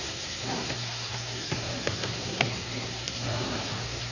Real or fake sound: fake